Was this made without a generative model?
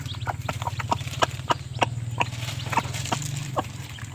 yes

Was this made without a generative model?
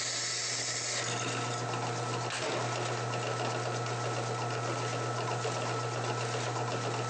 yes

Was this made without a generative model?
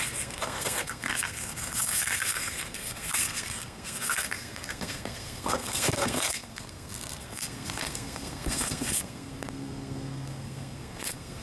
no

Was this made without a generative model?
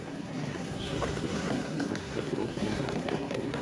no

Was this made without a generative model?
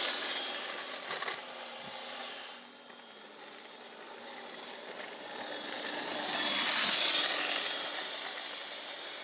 yes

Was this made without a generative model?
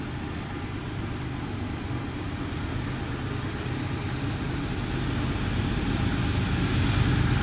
yes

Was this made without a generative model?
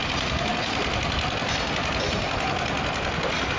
yes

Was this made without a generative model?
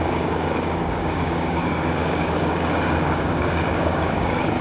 no